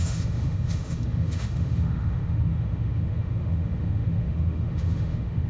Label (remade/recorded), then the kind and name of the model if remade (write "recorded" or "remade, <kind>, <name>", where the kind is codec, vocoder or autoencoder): remade, autoencoder, DAC-VAE